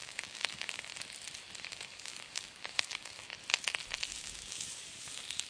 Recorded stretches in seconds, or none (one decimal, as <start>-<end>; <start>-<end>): 0.9-1.7; 3.3-4.1